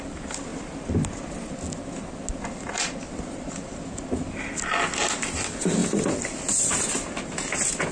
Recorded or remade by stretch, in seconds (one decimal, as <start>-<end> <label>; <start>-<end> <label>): 0.0-7.9 recorded